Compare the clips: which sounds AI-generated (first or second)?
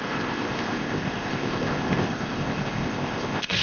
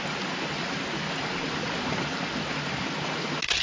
first